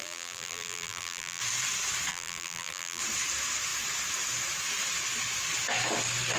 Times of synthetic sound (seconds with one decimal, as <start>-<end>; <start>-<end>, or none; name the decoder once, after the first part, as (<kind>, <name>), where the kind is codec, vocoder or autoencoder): 0.0-1.4 (vocoder, BigVGAN v2); 2.1-3.0